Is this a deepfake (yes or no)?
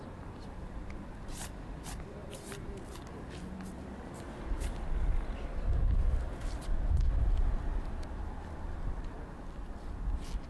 no